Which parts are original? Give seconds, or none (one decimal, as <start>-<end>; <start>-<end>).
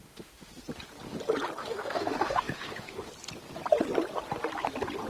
0.5-1.6; 3.1-5.1